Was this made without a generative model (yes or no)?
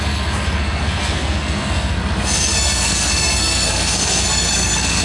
no